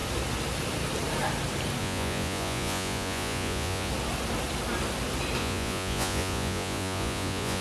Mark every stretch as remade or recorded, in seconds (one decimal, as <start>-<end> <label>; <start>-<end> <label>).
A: 0.0-1.8 recorded; 1.8-3.9 remade; 3.9-5.4 recorded; 5.4-7.6 remade